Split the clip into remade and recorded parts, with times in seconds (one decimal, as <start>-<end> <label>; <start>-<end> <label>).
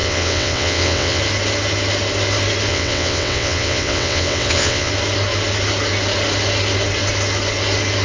0.0-1.2 remade; 1.2-2.7 recorded; 2.7-4.9 remade; 4.9-8.0 recorded